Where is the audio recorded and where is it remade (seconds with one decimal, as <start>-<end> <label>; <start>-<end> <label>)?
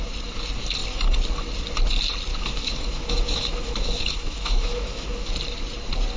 0.0-2.3 recorded; 2.3-5.3 remade; 5.3-6.2 recorded